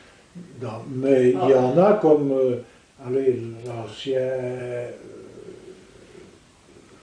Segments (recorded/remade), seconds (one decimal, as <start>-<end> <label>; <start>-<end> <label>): 0.0-7.0 recorded